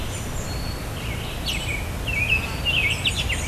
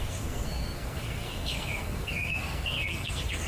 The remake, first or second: second